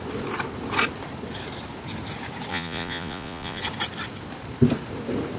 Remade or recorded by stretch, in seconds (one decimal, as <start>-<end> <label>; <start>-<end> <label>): 0.0-2.5 recorded; 2.5-3.6 remade; 3.6-5.4 recorded

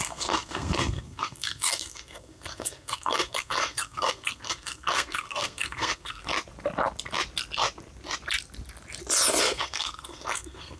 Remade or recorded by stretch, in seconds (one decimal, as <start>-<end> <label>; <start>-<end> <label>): 0.0-6.3 remade; 6.3-9.4 recorded; 9.4-10.8 remade

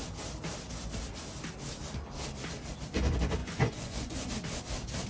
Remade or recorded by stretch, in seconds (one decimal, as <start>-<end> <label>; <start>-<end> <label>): 0.0-3.4 recorded; 3.4-4.3 remade; 4.3-5.1 recorded

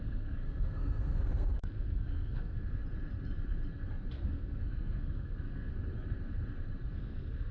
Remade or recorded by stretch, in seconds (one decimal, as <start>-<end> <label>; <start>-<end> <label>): 0.0-2.8 remade; 2.8-4.1 recorded; 4.1-5.7 remade; 5.7-6.9 recorded; 6.9-7.5 remade